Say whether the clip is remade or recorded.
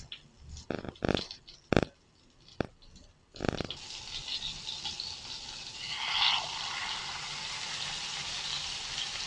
recorded